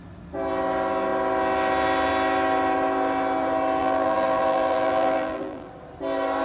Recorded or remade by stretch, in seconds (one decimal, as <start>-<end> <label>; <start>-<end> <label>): 0.0-3.8 recorded; 3.8-5.7 remade; 5.7-6.4 recorded